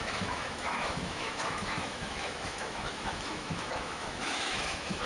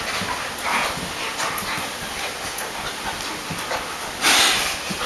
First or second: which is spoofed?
first